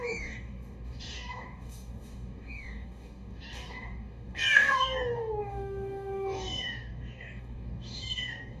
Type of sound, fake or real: fake